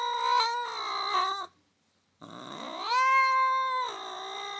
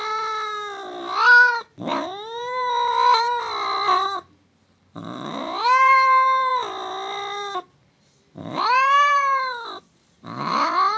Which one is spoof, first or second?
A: second